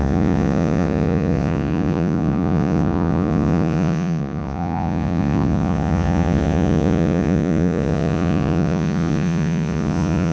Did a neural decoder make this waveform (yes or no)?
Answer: yes